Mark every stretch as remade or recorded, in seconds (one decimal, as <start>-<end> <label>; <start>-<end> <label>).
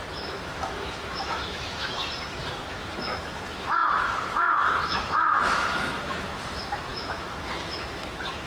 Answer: 0.0-2.0 remade; 2.0-2.7 recorded; 2.7-8.5 remade